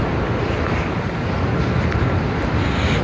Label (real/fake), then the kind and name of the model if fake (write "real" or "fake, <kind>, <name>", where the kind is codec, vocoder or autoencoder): real